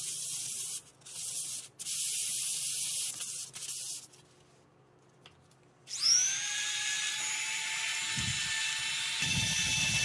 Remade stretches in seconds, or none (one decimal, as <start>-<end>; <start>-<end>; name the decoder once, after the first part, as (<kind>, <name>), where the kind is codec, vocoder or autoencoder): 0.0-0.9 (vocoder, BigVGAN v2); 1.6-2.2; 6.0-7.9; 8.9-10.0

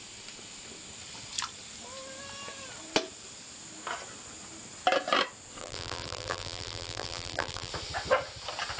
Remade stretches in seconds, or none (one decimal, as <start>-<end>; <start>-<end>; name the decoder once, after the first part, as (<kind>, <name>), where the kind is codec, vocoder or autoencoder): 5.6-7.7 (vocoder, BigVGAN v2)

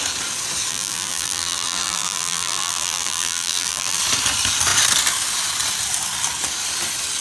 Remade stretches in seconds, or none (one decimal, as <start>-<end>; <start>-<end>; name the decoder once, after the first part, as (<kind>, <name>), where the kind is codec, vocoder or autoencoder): 0.7-4.0 (vocoder, BigVGAN v2)

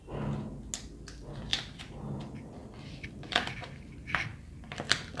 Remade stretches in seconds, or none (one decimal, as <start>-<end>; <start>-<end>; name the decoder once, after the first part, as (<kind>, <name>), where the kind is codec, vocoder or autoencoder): 1.5-2.2 (vocoder, BigVGAN v2); 2.6-3.5; 4.3-5.2

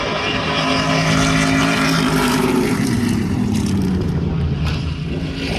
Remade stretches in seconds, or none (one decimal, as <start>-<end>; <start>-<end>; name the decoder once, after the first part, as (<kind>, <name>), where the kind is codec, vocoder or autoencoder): 1.6-5.0 (vocoder, BigVGAN v2)

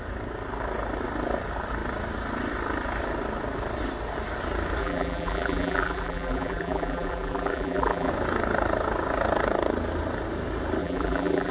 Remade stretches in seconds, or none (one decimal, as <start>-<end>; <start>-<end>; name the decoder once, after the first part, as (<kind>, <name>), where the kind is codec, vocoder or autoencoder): 4.8-8.1 (vocoder, BigVGAN v2); 10.8-11.5